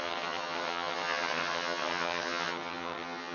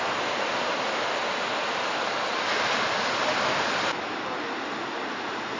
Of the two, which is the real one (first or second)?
second